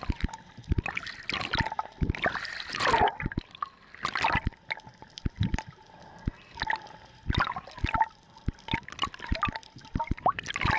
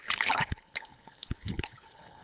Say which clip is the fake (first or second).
second